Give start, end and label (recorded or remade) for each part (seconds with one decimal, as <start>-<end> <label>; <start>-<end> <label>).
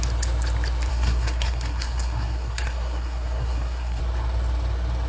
0.0-0.9 recorded; 0.9-4.0 remade; 4.0-5.1 recorded